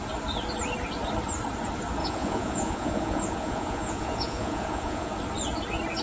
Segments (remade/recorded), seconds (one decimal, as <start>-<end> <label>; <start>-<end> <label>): 0.0-2.0 recorded; 2.0-5.1 remade; 5.1-6.0 recorded